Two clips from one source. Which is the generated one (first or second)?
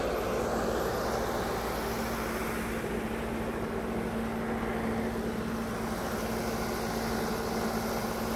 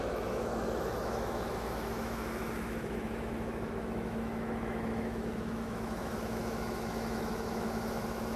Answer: second